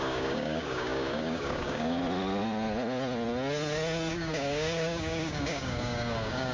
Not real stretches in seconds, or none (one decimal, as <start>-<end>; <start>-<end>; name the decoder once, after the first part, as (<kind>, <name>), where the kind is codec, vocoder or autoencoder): 0.0-2.0 (codec, DAC); 4.1-6.5